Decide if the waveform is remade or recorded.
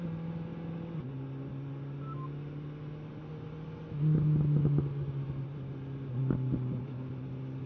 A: recorded